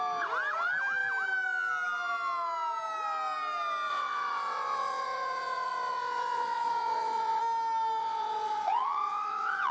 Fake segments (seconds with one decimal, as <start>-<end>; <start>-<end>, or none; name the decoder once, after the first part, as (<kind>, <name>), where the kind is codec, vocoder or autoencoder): 3.9-7.4 (vocoder, WaveNeXt); 8.0-9.7